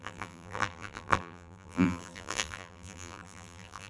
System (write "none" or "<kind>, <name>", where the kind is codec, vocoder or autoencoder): vocoder, BigVGAN v2